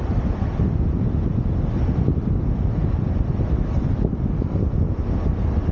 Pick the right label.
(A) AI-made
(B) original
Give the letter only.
B